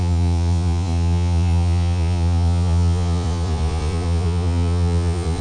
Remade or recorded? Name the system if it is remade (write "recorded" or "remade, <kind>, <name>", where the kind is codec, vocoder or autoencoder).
remade, vocoder, Vocos